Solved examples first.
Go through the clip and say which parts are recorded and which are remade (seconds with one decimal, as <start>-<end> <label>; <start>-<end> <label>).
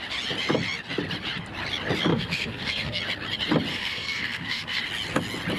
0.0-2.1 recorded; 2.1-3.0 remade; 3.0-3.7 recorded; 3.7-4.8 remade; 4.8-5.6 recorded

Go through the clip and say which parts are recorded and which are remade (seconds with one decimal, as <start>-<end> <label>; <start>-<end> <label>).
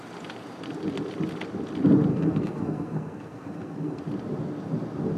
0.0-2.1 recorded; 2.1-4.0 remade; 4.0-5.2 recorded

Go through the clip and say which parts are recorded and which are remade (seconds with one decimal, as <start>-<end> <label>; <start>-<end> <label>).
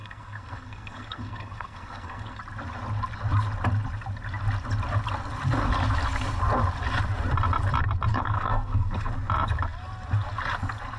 0.0-2.4 remade; 2.4-8.1 recorded; 8.1-9.1 remade; 9.1-11.0 recorded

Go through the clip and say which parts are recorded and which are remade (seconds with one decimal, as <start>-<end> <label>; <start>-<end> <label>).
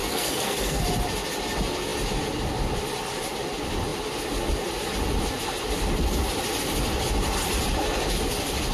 0.0-0.8 remade; 0.8-8.7 recorded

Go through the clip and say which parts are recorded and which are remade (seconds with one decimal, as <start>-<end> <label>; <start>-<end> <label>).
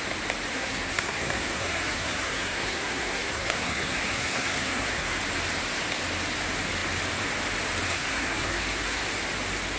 0.0-0.5 recorded; 0.5-5.2 remade; 5.2-7.9 recorded; 7.9-9.0 remade; 9.0-9.8 recorded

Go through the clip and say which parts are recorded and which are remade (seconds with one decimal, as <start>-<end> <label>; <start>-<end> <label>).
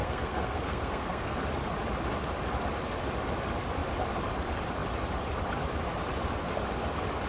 0.0-1.5 remade; 1.5-7.3 recorded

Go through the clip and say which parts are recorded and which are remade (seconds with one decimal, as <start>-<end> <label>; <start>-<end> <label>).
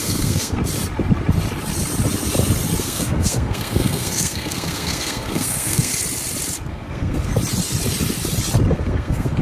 0.0-0.6 remade; 0.6-2.8 recorded; 2.8-5.9 remade; 5.9-6.7 recorded; 6.7-7.3 remade; 7.3-8.7 recorded; 8.7-9.4 remade